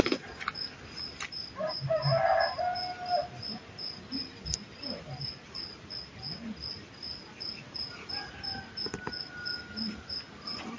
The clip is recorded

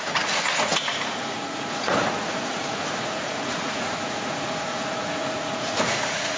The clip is remade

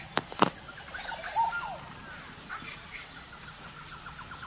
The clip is recorded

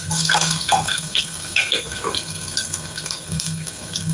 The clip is remade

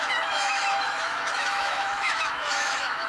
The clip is remade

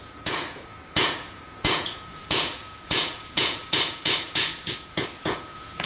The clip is remade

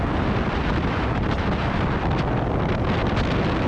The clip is recorded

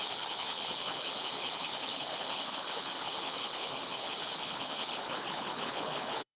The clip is remade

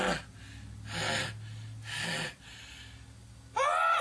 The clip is recorded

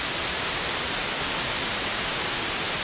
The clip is recorded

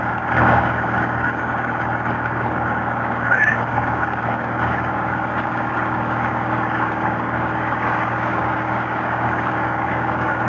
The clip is remade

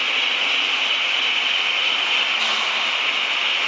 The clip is recorded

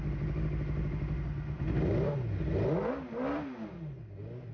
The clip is recorded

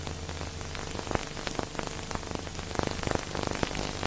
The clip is recorded